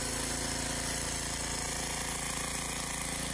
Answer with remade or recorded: recorded